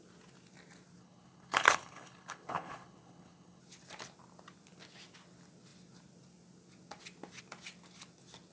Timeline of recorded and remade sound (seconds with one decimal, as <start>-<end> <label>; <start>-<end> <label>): 0.0-1.0 recorded; 1.0-3.6 remade; 3.6-8.5 recorded